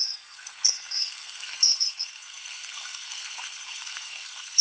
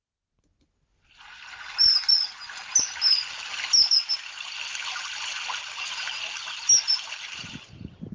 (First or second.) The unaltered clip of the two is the second